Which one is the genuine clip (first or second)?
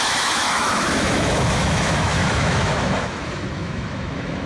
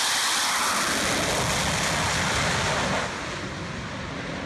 second